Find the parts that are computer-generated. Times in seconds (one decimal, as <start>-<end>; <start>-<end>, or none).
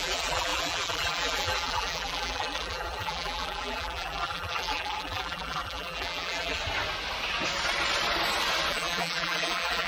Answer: 0.0-6.6; 8.7-9.9